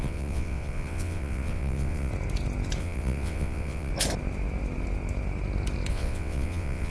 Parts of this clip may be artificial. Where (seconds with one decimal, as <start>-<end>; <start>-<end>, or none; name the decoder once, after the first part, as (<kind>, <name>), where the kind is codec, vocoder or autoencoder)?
0.0-2.1 (vocoder, WaveNeXt); 2.8-3.9; 5.9-6.9